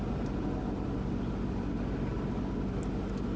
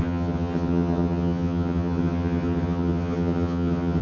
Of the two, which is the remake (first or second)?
second